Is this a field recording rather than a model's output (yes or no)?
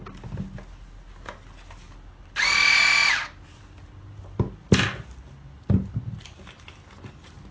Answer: yes